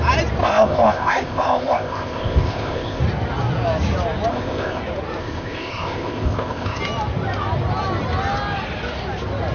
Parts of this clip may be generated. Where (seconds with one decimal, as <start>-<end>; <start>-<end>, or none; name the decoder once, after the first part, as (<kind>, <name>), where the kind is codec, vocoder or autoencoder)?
0.4-3.0 (codec, ZipCodec); 4.3-4.8; 5.2-6.8